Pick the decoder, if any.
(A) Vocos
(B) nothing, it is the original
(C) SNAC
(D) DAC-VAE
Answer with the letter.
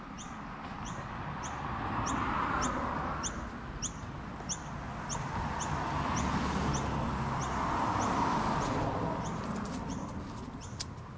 B